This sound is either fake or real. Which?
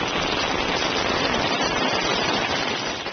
real